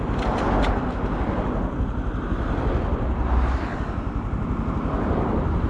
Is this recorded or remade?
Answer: recorded